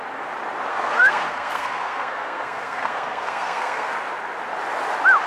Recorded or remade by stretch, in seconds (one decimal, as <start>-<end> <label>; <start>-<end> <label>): 0.0-0.7 recorded; 0.7-3.9 remade; 3.9-5.3 recorded